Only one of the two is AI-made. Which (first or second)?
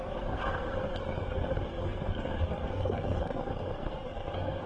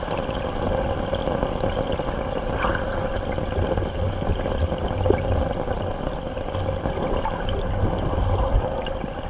first